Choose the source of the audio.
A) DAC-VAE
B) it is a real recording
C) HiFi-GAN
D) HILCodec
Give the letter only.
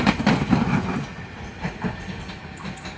B